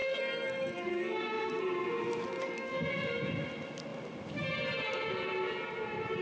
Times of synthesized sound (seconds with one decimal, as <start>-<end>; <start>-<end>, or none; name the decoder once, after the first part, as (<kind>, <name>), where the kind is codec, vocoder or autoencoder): 0.0-1.6 (codec, SNAC); 2.4-2.9